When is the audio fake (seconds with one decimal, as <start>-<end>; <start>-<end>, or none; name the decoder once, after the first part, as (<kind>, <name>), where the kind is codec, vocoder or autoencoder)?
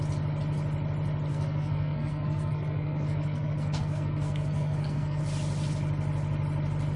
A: 1.3-5.2 (codec, SNAC)